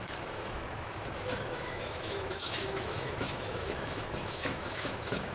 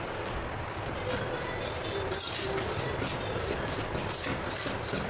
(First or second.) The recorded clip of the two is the second